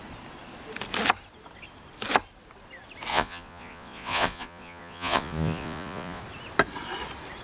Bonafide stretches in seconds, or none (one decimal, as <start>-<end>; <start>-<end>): 0.0-3.1; 6.2-7.4